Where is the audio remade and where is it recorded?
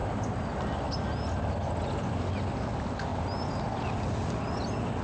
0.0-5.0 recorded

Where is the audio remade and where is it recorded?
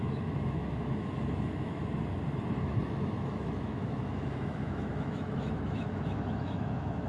0.0-1.8 remade; 1.8-2.6 recorded; 2.6-7.1 remade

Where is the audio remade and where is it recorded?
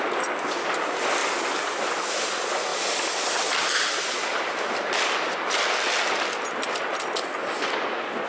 0.0-8.3 recorded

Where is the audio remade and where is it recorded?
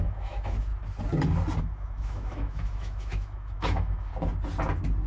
0.0-0.7 remade; 0.7-1.6 recorded; 1.6-4.1 remade; 4.1-5.1 recorded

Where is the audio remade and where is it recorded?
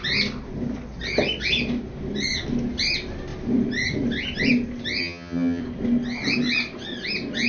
0.0-5.0 recorded; 5.0-5.6 remade; 5.6-7.5 recorded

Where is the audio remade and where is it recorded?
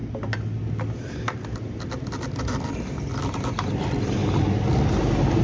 0.0-5.4 recorded